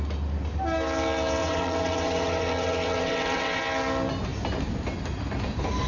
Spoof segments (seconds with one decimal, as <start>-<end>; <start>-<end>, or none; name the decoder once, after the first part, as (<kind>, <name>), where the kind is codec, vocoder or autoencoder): 1.4-3.6 (vocoder, WaveNeXt)